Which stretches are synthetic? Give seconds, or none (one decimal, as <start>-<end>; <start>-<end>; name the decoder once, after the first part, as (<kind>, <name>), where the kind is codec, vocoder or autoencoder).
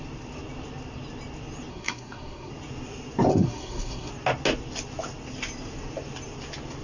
1.7-2.5 (codec, SNAC); 3.3-4.1